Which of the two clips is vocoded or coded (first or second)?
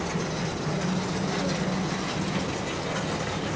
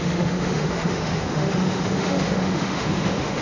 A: second